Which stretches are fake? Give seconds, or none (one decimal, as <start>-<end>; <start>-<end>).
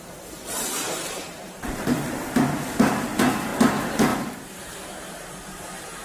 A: 0.0-3.5; 4.6-6.0